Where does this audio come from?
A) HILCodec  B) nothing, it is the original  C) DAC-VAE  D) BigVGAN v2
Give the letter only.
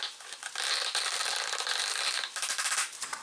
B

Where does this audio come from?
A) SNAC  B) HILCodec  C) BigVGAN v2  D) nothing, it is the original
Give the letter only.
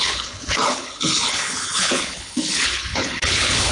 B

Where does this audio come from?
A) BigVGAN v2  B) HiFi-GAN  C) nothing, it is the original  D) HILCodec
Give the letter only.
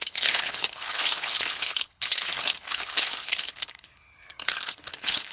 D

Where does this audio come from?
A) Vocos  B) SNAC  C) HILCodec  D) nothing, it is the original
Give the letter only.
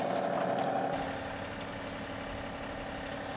D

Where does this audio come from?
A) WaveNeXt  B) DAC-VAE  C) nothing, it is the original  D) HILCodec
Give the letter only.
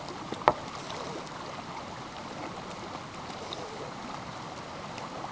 C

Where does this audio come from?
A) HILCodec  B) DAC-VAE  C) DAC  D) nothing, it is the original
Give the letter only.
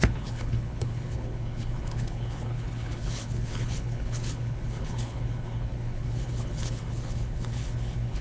A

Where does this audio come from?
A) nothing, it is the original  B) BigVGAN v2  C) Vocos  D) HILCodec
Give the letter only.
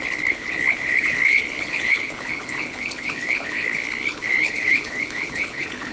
D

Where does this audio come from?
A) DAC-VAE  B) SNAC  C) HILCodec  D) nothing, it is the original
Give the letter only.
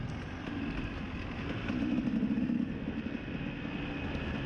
D